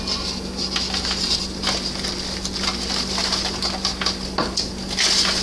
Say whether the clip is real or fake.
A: real